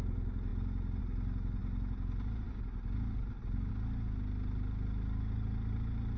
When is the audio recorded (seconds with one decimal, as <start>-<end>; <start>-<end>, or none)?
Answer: 0.0-6.2